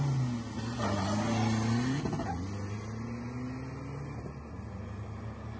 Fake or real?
real